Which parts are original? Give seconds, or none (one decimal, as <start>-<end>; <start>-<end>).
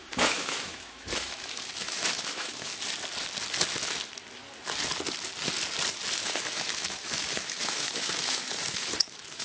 2.7-6.2